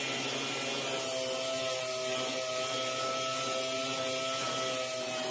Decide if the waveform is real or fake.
real